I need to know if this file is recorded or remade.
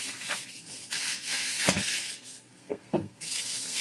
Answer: remade